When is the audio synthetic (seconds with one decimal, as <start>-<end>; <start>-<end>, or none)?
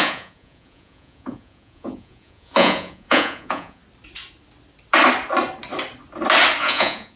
0.0-3.8; 6.6-7.2